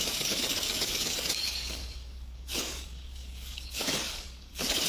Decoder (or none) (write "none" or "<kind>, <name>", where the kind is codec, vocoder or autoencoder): codec, DAC